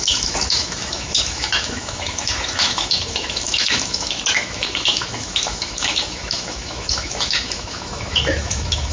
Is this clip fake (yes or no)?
yes